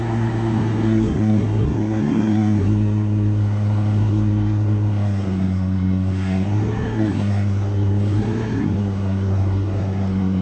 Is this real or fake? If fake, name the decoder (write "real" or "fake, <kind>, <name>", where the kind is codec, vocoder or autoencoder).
fake, codec, SNAC